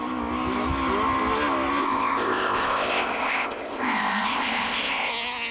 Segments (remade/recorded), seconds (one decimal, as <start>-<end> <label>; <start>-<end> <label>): 0.0-1.8 recorded; 1.8-5.1 remade; 5.1-5.5 recorded